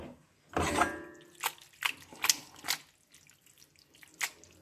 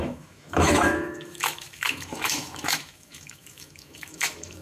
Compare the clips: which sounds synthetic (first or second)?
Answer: second